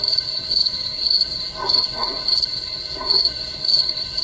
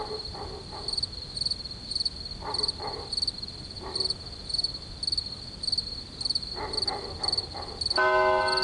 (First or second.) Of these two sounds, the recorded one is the second